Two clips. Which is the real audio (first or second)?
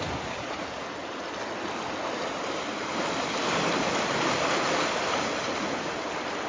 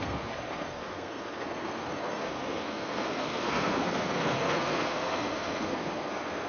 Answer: first